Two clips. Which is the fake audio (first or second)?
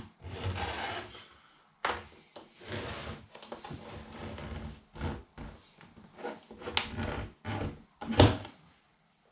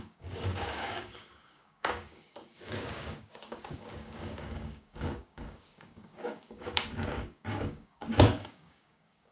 second